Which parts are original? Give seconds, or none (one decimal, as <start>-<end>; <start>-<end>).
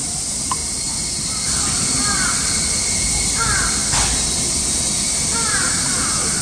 0.0-6.4